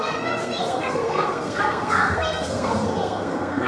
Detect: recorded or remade remade